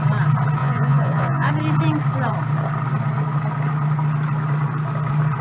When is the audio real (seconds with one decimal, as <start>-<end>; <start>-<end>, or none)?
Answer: 0.0-0.6; 1.5-5.4